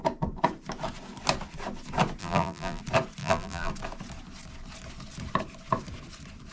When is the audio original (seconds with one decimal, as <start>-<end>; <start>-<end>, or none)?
0.0-2.2; 2.8-3.2; 3.7-6.5